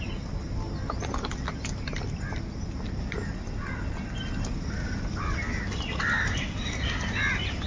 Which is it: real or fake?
real